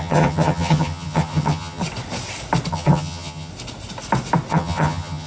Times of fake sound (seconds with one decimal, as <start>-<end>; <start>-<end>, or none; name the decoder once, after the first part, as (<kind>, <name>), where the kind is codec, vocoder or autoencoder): 0.0-1.8 (vocoder, HiFi-GAN); 2.7-3.5; 4.5-5.3